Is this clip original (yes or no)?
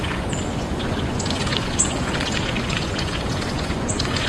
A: no